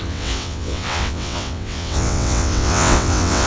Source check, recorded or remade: remade